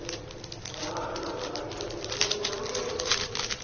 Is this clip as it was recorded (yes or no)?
yes